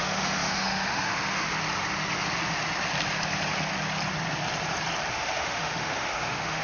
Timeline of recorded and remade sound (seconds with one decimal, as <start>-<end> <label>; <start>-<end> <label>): 0.0-1.5 remade; 1.5-5.1 recorded; 5.1-6.6 remade